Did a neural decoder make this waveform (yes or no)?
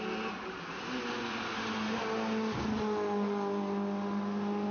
no